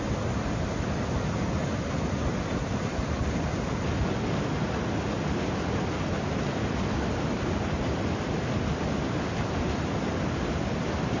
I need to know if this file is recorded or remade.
recorded